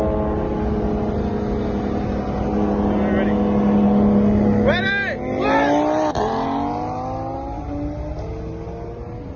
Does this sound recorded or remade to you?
recorded